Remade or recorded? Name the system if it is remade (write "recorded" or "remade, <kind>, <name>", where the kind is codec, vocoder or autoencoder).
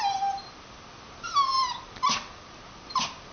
recorded